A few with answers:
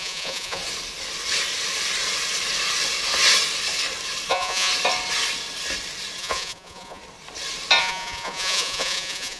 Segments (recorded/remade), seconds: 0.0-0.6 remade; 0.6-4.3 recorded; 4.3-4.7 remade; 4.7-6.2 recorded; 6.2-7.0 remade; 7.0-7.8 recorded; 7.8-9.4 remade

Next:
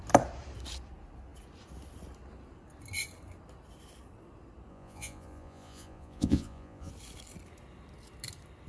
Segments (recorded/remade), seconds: 0.0-4.7 recorded; 4.7-6.9 remade; 6.9-8.7 recorded

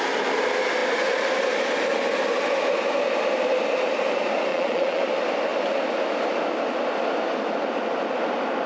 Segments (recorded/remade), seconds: 0.0-4.5 recorded; 4.5-5.0 remade; 5.0-8.7 recorded

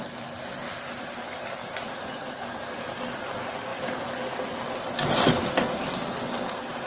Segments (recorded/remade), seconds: 0.0-1.6 recorded; 1.6-2.4 remade; 2.4-6.9 recorded

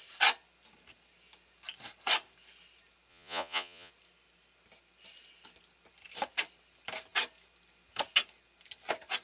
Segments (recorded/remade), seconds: 0.0-3.1 recorded; 3.1-3.9 remade; 3.9-9.2 recorded

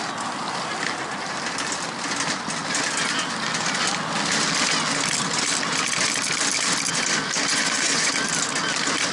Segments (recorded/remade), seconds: 0.0-7.5 recorded; 7.5-8.1 remade; 8.1-9.1 recorded

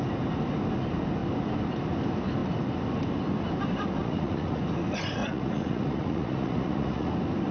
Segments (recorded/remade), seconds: 0.0-4.0 recorded; 4.0-4.6 remade; 4.6-5.2 recorded; 5.2-7.1 remade; 7.1-7.5 recorded

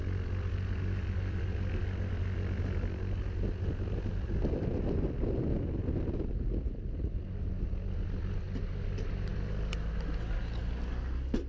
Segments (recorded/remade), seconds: 0.0-11.5 recorded